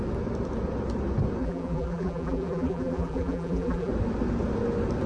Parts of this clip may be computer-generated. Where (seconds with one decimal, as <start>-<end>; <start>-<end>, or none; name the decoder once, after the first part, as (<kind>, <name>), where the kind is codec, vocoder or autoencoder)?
1.4-3.9 (vocoder, BigVGAN v2)